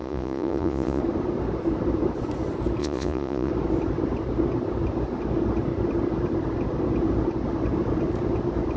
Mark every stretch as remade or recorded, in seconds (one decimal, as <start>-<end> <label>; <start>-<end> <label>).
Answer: 0.0-1.0 remade; 1.0-2.8 recorded; 2.8-3.5 remade; 3.5-8.8 recorded